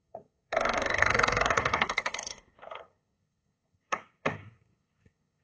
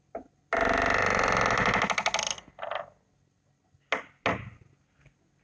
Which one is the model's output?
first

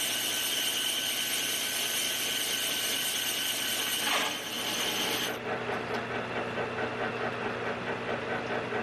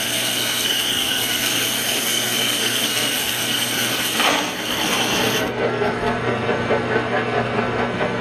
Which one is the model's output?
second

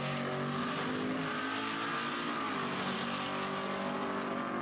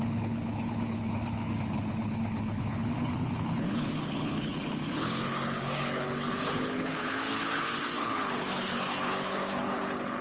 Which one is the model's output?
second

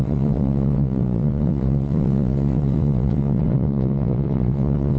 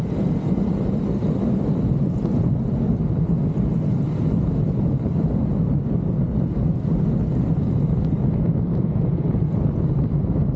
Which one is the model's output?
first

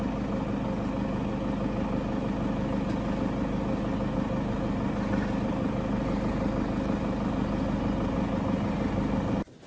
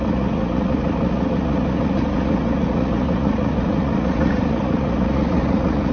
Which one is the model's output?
second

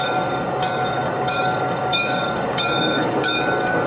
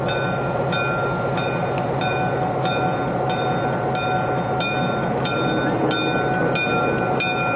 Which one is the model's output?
first